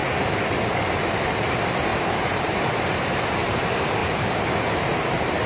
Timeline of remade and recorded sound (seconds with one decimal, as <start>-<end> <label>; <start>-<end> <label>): 0.0-1.2 recorded; 1.2-5.5 remade